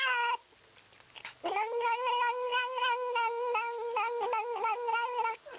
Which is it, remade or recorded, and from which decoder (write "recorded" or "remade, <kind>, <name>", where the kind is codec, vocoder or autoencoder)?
recorded